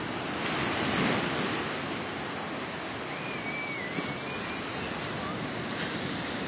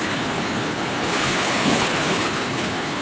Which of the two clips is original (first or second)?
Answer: first